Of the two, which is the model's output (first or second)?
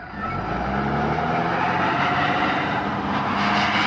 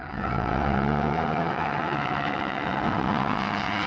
second